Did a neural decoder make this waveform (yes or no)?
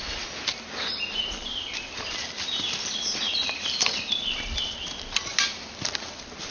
no